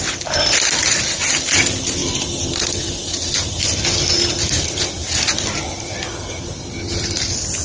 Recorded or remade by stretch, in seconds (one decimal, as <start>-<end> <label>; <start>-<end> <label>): 0.0-7.6 recorded